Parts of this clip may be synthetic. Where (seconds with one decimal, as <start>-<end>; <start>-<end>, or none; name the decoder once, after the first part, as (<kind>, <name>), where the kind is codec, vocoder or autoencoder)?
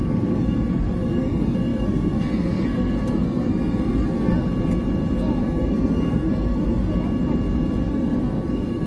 0.0-4.3 (codec, SNAC); 5.4-6.9; 7.9-8.9